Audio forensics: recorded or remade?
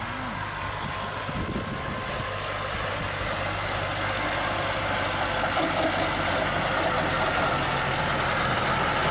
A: recorded